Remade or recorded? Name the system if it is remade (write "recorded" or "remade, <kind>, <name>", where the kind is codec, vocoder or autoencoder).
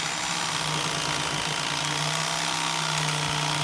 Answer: recorded